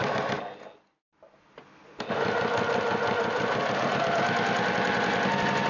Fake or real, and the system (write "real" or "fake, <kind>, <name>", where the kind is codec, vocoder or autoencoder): real